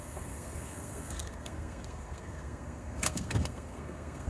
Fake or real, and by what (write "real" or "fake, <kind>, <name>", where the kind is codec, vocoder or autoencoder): fake, codec, SNAC